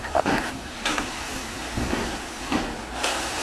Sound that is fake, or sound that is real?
fake